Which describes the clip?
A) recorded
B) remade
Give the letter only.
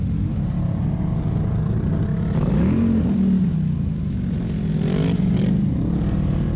A